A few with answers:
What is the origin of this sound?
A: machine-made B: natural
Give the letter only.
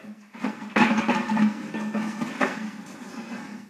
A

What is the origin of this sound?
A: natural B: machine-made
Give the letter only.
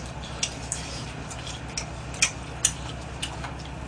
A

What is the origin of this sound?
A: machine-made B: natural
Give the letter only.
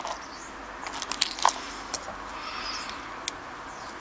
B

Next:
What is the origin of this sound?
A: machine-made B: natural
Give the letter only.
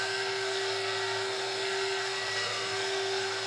A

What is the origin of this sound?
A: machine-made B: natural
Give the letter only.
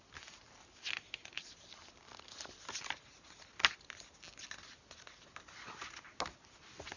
B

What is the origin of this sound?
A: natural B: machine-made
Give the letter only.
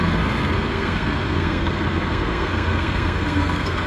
B